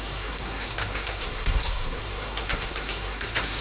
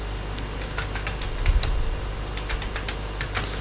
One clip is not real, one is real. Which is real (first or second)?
second